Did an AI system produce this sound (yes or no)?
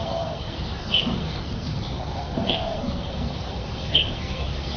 yes